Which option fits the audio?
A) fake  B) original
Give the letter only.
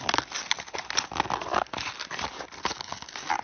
B